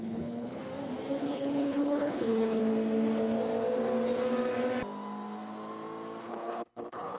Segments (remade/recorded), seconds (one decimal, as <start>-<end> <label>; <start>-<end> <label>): 0.0-0.6 remade; 0.6-1.2 recorded; 1.2-2.6 remade; 2.6-6.2 recorded; 6.2-7.2 remade